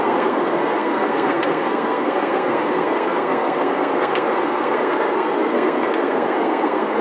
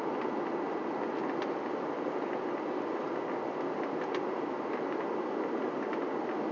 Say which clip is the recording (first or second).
second